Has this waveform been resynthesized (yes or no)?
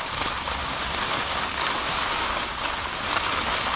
no